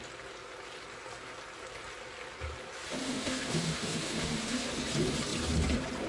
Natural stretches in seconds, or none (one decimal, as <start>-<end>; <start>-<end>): 0.0-3.0; 4.7-6.1

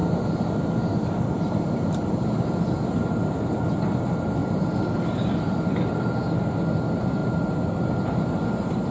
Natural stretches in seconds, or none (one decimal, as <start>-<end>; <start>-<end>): 0.5-0.9; 3.4-7.2; 7.9-8.9

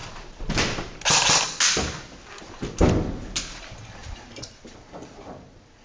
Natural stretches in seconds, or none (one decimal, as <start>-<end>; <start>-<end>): 0.0-4.0; 4.6-5.8